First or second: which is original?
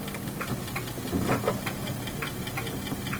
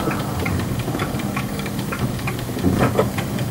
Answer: first